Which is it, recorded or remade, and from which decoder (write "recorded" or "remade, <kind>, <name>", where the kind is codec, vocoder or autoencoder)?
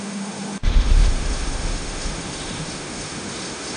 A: remade, autoencoder, DAC-VAE